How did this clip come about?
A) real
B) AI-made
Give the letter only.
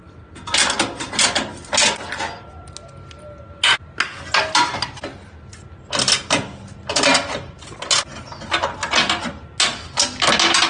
A